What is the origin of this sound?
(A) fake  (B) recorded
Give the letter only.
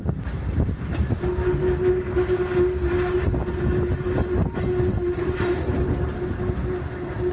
B